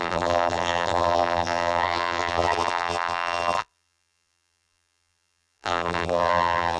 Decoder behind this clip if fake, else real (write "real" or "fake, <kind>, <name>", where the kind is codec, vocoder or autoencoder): fake, vocoder, BigVGAN v2